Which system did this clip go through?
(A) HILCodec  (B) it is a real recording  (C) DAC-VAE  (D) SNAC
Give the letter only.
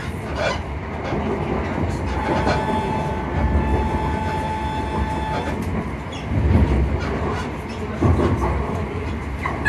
B